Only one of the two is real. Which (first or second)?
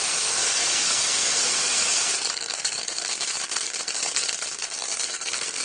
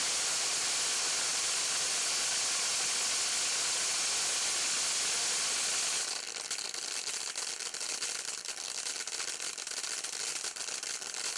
second